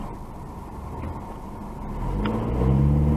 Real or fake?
real